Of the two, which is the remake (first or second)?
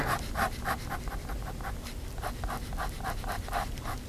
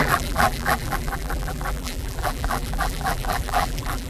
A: second